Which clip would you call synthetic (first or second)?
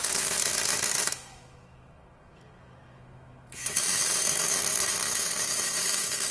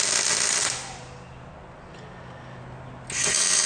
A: first